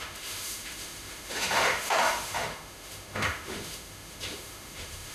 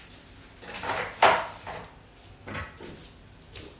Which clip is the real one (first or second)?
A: second